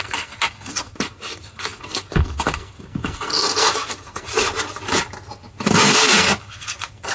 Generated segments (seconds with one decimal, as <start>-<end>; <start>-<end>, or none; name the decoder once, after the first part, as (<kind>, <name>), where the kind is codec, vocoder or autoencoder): 0.0-4.3 (codec, SNAC); 5.7-7.1